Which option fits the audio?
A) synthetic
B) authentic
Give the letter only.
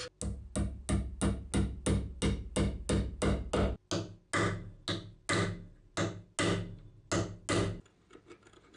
B